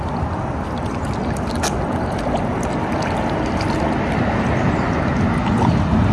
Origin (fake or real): real